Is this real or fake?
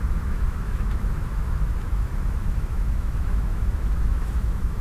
fake